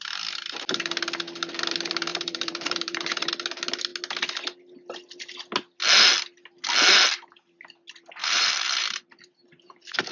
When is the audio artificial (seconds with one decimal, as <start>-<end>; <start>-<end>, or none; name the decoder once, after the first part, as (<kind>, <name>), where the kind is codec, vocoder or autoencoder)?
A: 2.1-3.3 (vocoder, BigVGAN v2); 8.2-10.1